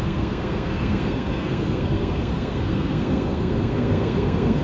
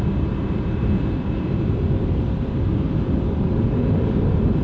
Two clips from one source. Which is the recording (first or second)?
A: second